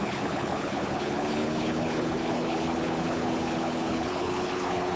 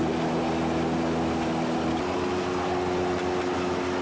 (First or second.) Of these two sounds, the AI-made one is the first